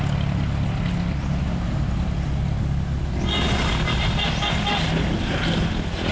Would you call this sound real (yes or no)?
yes